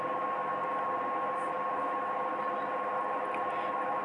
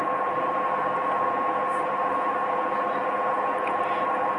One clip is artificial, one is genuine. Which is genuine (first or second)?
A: first